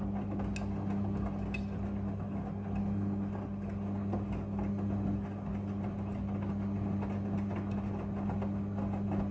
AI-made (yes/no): no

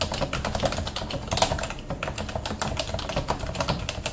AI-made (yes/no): no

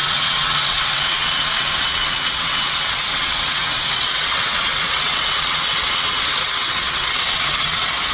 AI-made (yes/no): yes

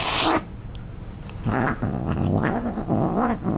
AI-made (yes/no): no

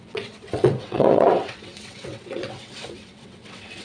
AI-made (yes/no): yes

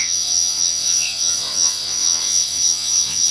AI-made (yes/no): yes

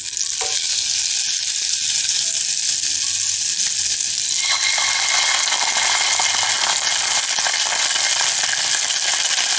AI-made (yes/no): no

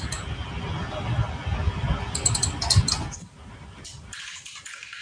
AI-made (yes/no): no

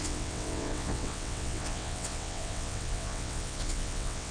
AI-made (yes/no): yes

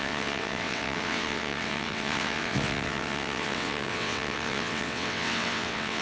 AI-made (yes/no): yes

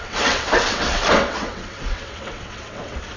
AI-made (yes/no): yes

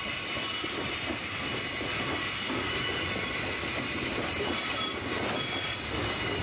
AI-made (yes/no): no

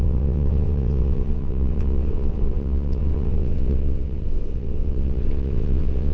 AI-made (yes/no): yes